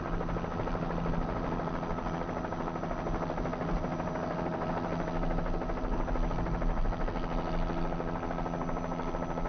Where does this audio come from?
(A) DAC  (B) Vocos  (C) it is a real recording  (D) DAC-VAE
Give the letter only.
C